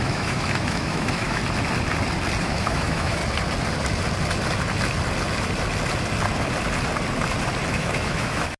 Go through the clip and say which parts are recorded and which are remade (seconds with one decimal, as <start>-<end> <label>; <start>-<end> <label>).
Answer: 0.0-1.4 remade; 1.4-2.4 recorded; 2.4-3.2 remade; 3.2-7.7 recorded; 7.7-8.6 remade